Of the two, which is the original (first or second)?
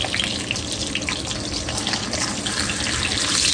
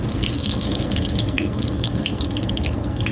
first